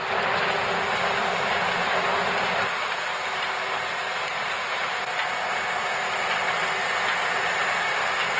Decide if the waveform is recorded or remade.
recorded